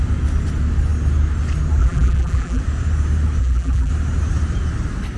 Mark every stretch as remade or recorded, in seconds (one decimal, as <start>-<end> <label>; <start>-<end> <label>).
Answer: 0.0-1.8 recorded; 1.8-2.6 remade; 2.6-3.4 recorded; 3.4-3.9 remade; 3.9-5.2 recorded

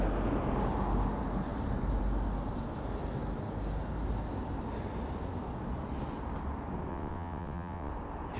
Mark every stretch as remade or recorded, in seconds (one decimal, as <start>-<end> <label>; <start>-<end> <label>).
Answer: 0.0-6.9 recorded; 6.9-7.9 remade; 7.9-8.4 recorded